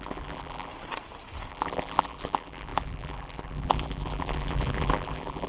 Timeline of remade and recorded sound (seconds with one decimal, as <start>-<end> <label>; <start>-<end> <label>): 0.0-0.7 remade; 0.7-1.5 recorded; 1.5-5.5 remade